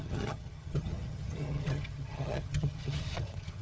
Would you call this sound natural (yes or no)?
no